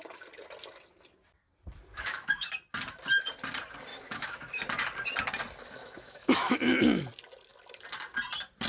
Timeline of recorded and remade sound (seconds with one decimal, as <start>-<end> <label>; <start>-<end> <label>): 0.0-1.9 recorded; 1.9-2.5 remade; 2.5-3.9 recorded; 3.9-4.6 remade; 4.6-5.8 recorded; 5.8-6.6 remade; 6.6-8.7 recorded